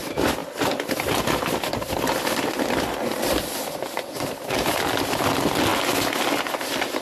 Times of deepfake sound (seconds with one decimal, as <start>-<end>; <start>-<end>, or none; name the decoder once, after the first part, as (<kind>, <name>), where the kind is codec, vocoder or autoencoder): 0.0-0.4 (vocoder, BigVGAN v2); 1.7-5.7; 6.4-7.0